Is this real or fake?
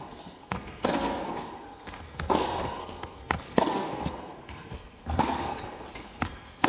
fake